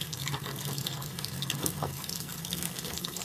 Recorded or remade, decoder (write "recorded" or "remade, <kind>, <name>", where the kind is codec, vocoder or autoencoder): remade, codec, SNAC